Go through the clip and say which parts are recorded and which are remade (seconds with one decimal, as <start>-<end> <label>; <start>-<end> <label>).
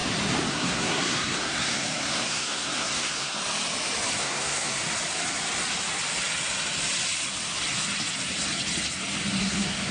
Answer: 0.0-0.5 recorded; 0.5-3.4 remade; 3.4-4.2 recorded; 4.2-4.8 remade; 4.8-9.4 recorded; 9.4-9.9 remade